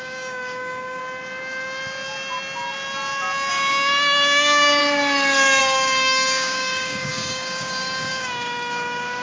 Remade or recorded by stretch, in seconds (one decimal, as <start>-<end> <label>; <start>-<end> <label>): 0.0-1.0 remade; 1.0-3.5 recorded; 3.5-4.8 remade; 4.8-5.6 recorded; 5.6-9.2 remade